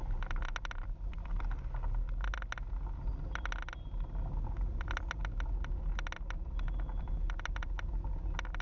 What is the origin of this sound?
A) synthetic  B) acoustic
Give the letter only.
B